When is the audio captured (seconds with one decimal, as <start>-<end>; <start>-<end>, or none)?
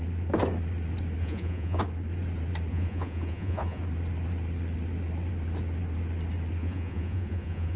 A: 0.0-1.2; 1.8-2.7; 3.8-6.6